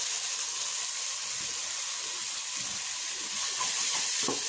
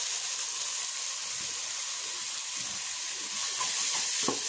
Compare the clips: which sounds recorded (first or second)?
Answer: second